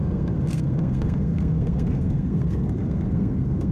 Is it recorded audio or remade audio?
remade